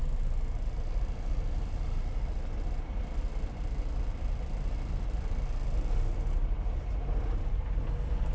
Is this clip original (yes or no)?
yes